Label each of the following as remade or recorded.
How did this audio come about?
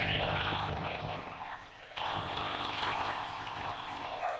remade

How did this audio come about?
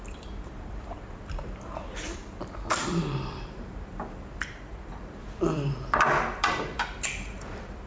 remade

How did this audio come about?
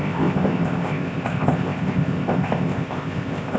remade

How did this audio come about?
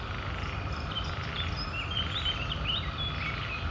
recorded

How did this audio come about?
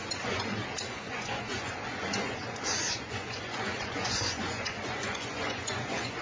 remade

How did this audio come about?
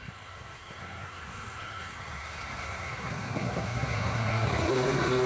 remade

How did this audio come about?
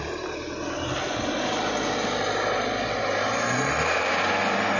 recorded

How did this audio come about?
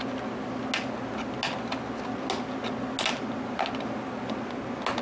recorded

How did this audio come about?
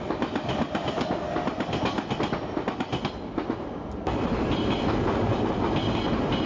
recorded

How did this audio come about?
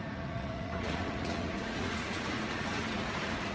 remade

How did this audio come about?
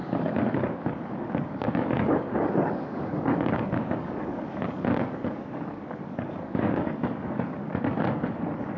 remade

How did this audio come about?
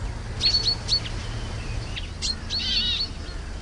recorded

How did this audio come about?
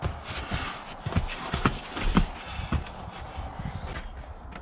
recorded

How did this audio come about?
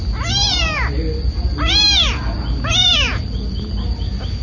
recorded